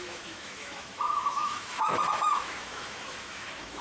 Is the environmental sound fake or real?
fake